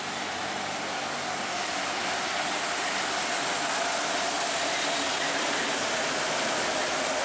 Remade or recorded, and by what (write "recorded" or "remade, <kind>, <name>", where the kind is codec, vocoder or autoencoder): recorded